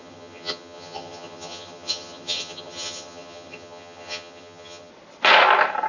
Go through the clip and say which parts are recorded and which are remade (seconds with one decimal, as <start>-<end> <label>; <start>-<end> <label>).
0.0-4.9 remade; 4.9-5.9 recorded